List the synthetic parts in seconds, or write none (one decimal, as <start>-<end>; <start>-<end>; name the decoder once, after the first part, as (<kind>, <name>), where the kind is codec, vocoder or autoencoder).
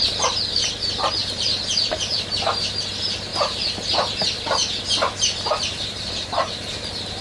none